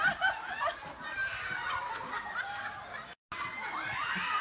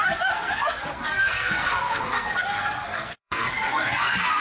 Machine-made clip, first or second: second